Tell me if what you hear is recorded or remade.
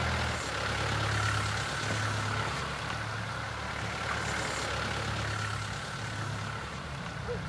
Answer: recorded